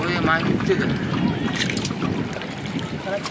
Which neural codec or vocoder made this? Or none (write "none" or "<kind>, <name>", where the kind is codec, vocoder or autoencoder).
none